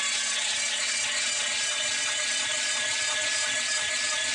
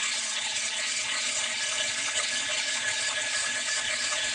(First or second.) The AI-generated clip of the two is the second